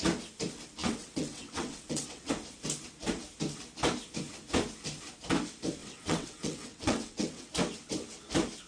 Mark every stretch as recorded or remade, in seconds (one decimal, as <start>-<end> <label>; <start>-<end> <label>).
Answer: 0.0-0.8 recorded; 0.8-2.3 remade; 2.3-5.8 recorded; 5.8-7.5 remade; 7.5-8.7 recorded